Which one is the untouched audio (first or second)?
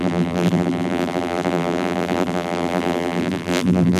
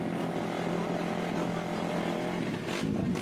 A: second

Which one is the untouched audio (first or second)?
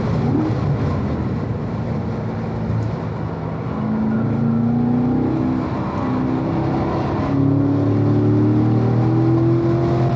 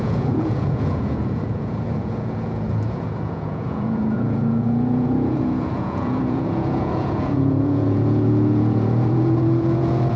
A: first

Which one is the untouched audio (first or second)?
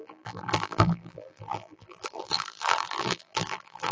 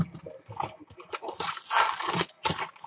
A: second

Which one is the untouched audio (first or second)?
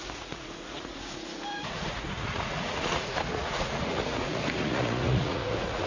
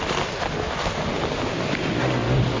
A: second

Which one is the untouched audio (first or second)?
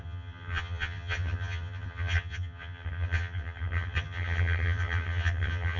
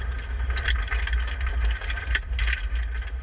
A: second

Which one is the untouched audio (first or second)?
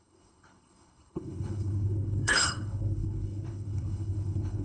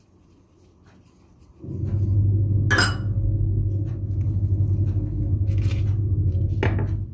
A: second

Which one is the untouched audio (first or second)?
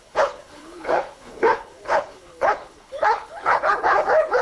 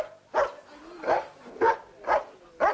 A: second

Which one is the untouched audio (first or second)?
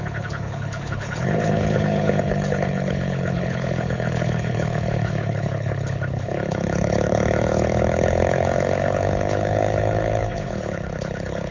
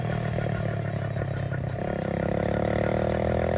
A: second